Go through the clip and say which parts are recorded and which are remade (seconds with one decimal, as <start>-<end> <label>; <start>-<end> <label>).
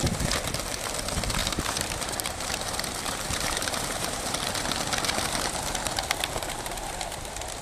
0.0-1.4 recorded; 1.4-4.4 remade; 4.4-7.6 recorded